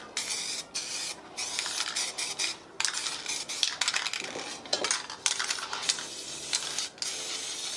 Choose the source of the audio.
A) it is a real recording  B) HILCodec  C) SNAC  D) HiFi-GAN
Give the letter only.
A